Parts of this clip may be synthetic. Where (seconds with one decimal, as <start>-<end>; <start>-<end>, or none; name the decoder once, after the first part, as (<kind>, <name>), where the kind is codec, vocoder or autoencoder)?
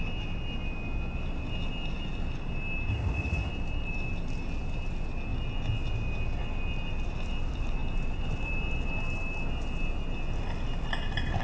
2.9-3.5 (vocoder, HiFi-GAN)